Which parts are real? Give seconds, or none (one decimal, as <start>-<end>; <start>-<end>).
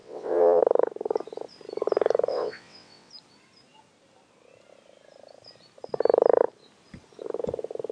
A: 0.6-2.3; 3.1-7.9